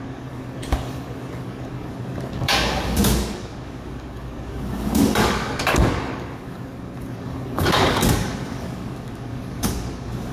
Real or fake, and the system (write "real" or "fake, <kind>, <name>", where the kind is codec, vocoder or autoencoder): fake, codec, DAC